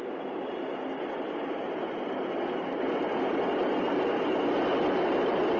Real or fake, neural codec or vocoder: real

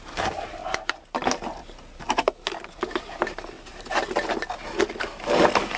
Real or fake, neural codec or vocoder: real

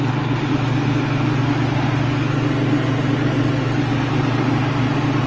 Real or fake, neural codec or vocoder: real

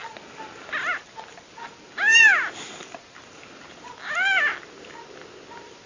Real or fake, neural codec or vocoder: real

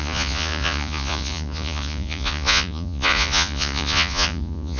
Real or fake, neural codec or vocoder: fake, vocoder, Vocos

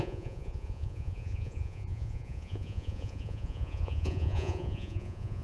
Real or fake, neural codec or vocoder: fake, vocoder, Vocos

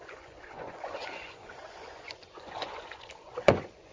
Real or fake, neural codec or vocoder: fake, vocoder, Vocos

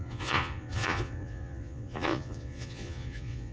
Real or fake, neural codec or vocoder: fake, vocoder, Vocos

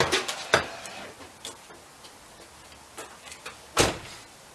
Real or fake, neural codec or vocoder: real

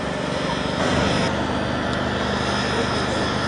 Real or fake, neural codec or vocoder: real